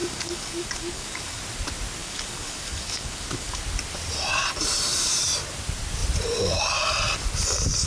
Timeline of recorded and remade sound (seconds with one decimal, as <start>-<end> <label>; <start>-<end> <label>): 0.0-1.4 remade; 1.4-2.0 recorded; 2.0-3.6 remade; 3.6-7.9 recorded

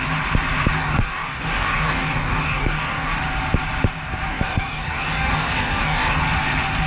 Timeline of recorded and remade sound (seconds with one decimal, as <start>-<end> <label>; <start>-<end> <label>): 0.0-0.8 recorded; 0.8-3.2 remade; 3.2-4.3 recorded; 4.3-6.2 remade; 6.2-6.9 recorded